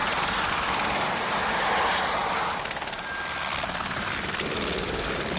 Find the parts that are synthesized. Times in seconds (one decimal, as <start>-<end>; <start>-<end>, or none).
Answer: 0.0-0.5; 2.2-5.4